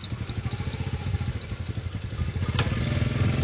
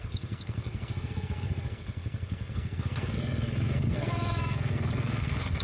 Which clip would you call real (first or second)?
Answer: first